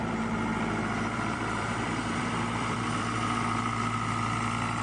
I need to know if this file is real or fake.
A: fake